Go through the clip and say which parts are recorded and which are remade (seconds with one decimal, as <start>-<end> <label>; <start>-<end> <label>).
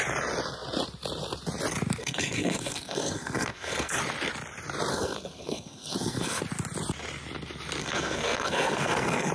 0.0-2.0 recorded; 2.0-4.0 remade; 4.0-4.9 recorded; 4.9-6.4 remade; 6.4-7.8 recorded; 7.8-9.3 remade